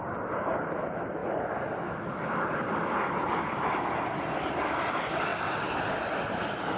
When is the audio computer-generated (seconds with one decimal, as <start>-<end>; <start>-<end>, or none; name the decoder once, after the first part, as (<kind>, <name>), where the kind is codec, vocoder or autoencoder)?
0.0-5.3 (vocoder, BigVGAN v2)